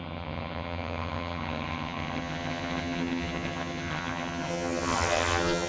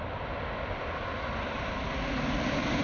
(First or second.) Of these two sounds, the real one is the second